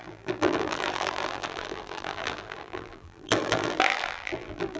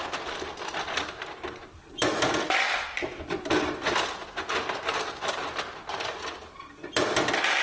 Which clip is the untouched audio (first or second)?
second